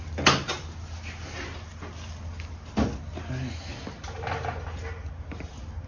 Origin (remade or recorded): recorded